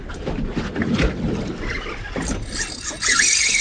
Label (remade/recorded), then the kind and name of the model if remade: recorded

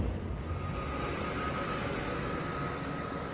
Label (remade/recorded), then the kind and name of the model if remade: recorded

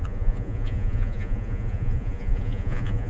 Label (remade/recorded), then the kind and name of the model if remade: remade, vocoder, Vocos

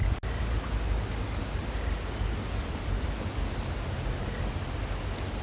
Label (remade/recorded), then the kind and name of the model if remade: recorded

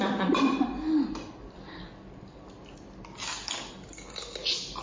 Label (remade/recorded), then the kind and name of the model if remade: recorded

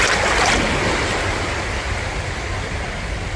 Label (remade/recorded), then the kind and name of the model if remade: recorded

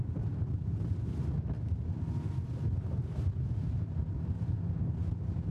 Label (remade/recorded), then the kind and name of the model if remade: recorded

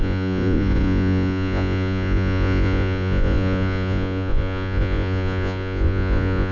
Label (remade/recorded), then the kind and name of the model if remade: remade, vocoder, Vocos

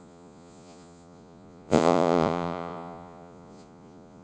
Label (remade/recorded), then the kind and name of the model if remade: remade, vocoder, Vocos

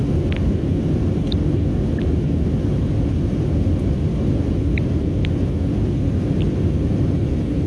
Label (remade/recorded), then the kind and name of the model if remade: recorded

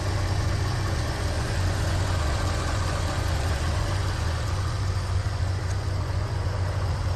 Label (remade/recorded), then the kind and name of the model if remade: remade, vocoder, Vocos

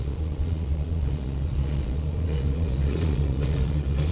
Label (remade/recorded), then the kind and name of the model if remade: remade, vocoder, Vocos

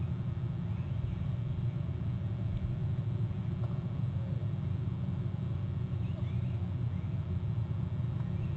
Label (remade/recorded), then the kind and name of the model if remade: recorded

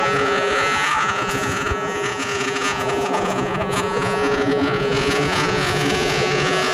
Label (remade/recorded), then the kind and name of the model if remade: remade, vocoder, Vocos